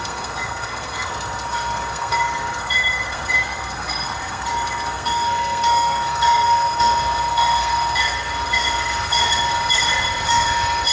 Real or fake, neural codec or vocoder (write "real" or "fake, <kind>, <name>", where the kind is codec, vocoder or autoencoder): fake, codec, SNAC